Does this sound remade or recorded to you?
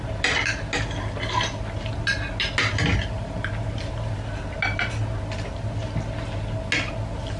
recorded